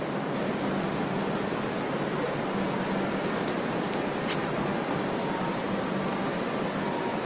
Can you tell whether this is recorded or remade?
recorded